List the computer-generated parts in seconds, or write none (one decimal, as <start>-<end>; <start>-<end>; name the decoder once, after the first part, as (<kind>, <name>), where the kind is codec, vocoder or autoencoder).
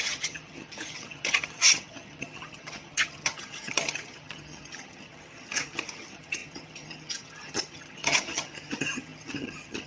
0.0-9.9 (vocoder, HiFi-GAN)